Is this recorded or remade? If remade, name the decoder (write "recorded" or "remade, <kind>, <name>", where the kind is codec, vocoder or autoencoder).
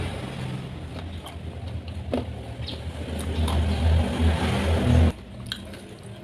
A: recorded